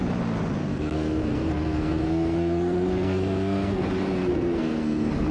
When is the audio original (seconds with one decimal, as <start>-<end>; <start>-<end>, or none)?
0.0-0.6; 3.8-4.3

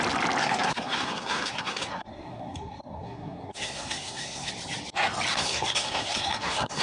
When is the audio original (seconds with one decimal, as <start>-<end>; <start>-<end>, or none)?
0.0-0.4; 4.5-5.3

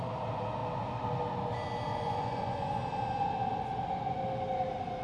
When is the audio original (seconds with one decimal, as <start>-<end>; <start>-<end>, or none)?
0.0-1.9; 2.8-5.0

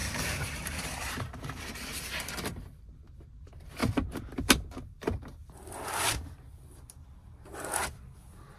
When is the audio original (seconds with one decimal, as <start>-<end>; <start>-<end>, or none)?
1.1-3.8; 5.5-8.6

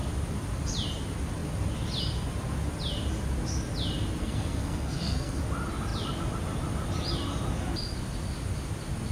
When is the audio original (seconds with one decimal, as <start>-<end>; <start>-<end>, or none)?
0.0-4.2; 5.4-9.1